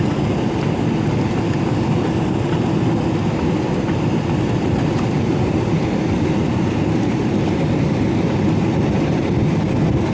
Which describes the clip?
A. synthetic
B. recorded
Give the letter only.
B